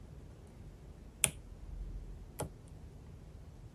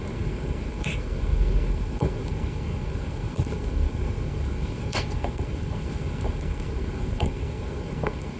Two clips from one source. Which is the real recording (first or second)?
first